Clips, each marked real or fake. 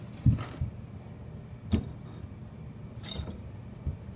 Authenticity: real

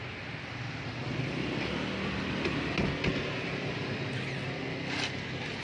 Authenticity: real